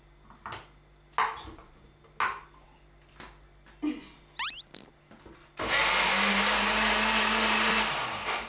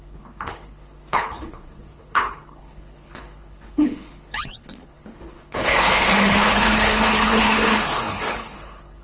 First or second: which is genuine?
first